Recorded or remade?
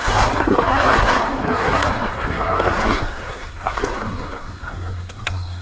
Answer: remade